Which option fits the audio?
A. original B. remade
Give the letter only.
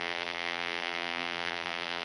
B